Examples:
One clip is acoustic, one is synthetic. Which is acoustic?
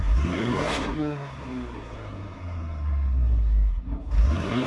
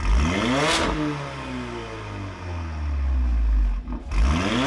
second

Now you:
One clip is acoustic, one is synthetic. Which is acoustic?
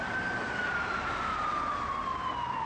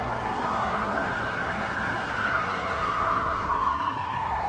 first